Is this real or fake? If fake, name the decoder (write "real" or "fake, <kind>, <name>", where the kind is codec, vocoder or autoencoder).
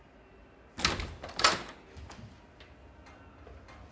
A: real